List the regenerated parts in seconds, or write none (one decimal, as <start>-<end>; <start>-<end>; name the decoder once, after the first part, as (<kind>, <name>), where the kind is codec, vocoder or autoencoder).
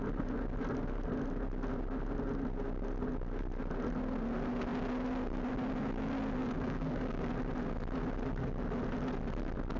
6.4-7.3 (codec, DAC)